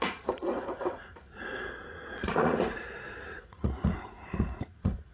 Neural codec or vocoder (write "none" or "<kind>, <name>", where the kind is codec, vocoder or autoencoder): vocoder, Vocos